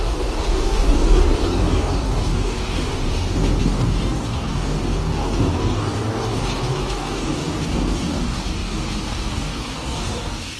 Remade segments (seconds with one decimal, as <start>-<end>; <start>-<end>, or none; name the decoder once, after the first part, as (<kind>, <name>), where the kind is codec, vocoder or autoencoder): 0.0-10.6 (codec, DAC)